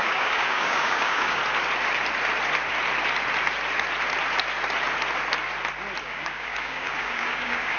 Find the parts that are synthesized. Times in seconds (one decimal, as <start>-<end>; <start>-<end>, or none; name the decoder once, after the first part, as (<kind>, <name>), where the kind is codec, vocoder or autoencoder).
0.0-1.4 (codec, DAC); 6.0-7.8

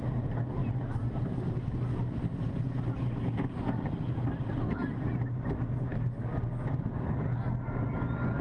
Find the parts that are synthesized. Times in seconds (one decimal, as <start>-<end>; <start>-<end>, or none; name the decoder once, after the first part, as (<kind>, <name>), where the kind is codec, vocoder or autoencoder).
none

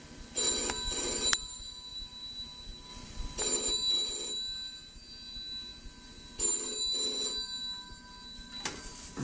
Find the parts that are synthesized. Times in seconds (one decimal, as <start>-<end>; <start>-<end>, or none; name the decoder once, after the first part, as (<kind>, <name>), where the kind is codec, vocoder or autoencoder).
none